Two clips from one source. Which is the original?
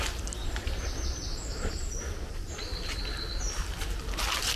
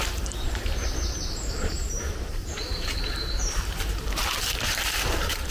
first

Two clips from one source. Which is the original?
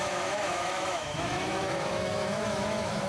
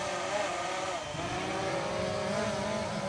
second